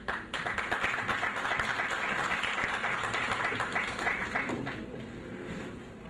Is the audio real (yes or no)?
yes